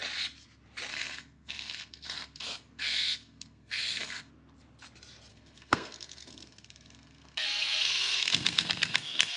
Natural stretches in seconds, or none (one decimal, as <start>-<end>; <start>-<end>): 0.0-0.9; 4.3-5.3